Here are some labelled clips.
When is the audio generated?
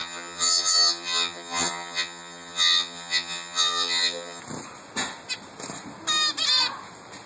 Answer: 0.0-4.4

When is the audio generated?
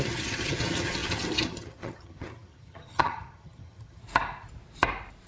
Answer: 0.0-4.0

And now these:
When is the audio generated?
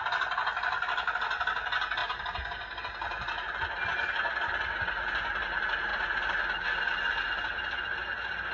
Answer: none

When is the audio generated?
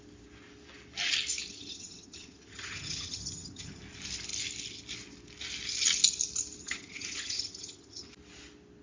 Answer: 1.5-3.8; 6.6-8.1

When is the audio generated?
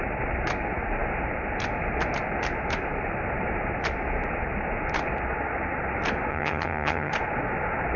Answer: 6.3-7.1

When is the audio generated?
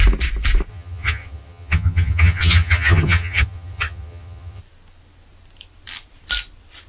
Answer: 0.7-4.6